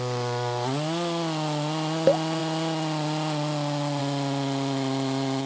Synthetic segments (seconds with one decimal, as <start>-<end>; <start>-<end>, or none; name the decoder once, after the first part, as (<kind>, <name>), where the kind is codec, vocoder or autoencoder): none